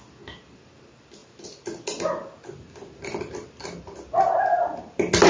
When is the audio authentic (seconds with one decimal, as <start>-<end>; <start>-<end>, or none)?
0.0-5.3